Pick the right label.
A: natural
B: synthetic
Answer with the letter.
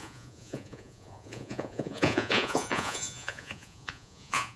B